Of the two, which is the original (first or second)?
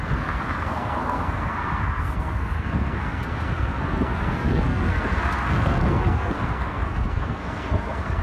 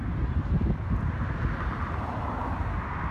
second